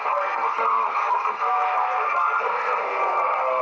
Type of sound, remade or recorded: remade